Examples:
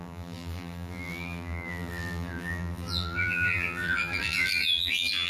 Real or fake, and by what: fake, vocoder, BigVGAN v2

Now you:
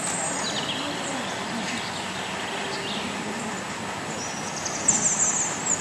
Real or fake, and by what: real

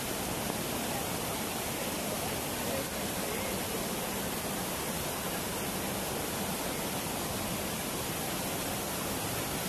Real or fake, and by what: real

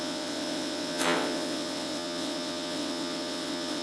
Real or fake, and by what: fake, vocoder, WaveNeXt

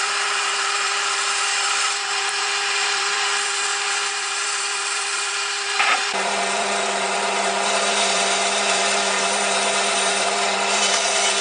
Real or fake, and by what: fake, vocoder, BigVGAN v2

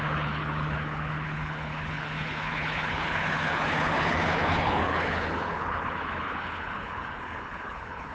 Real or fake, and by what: fake, codec, HILCodec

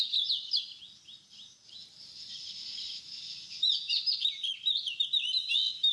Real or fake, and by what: real